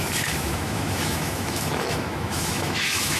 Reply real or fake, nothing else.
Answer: fake